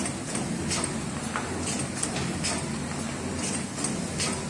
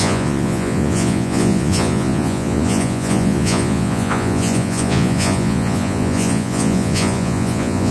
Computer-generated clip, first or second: second